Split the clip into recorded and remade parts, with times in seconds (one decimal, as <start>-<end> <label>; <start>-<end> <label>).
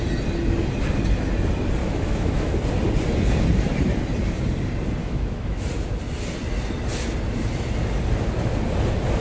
0.0-1.8 recorded; 1.8-2.5 remade; 2.5-5.0 recorded; 5.0-5.7 remade; 5.7-9.2 recorded